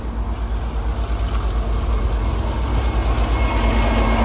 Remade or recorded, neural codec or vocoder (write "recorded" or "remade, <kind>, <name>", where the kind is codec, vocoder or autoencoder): recorded